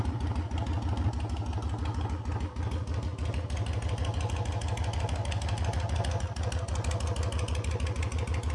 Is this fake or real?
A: real